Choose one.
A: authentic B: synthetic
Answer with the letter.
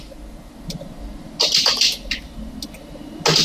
A